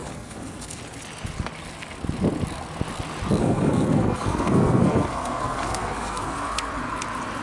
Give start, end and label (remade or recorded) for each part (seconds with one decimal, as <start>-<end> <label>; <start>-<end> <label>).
0.0-0.8 remade; 0.8-3.4 recorded; 3.4-6.7 remade; 6.7-7.4 recorded